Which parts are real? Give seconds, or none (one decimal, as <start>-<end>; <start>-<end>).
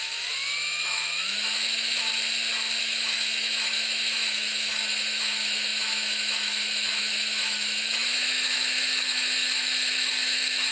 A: 2.1-2.8